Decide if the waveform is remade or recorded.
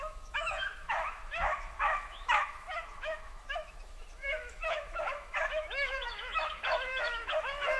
remade